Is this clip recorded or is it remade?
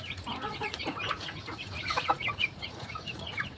remade